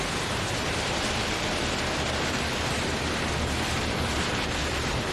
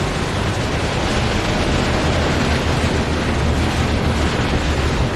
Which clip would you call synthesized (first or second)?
first